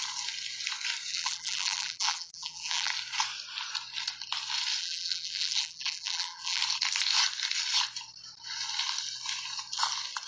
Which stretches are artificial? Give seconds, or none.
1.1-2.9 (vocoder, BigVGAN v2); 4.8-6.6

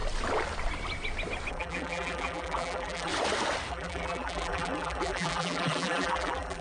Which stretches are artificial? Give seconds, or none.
1.5-3.1 (vocoder, BigVGAN v2); 3.7-6.6

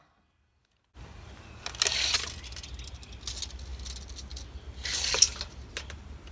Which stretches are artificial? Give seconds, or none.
none

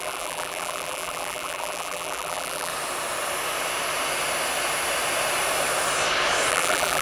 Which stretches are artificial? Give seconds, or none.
0.0-2.7 (vocoder, BigVGAN v2); 6.5-7.0